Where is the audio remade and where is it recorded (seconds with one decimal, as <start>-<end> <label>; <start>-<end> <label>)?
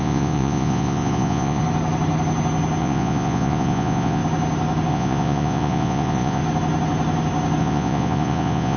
0.0-1.6 remade; 1.6-2.8 recorded; 2.8-4.2 remade; 4.2-4.9 recorded; 4.9-6.4 remade; 6.4-7.6 recorded; 7.6-8.8 remade